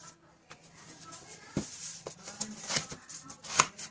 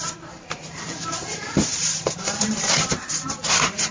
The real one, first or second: first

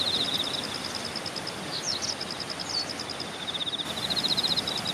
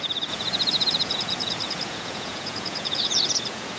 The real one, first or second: first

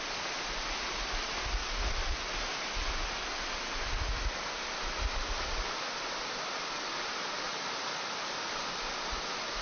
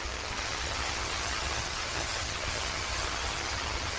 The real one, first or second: first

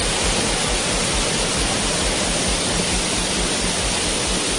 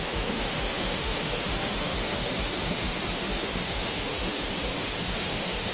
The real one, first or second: first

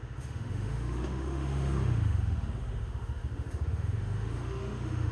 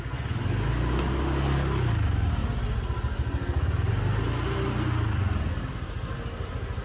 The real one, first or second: second